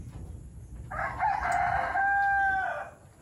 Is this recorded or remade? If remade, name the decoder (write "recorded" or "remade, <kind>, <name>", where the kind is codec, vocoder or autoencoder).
recorded